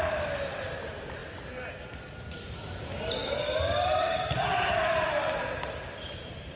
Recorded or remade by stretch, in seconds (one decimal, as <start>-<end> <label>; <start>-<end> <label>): 0.0-3.2 recorded; 3.2-6.6 remade